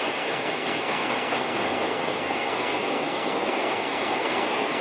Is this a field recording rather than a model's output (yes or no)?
no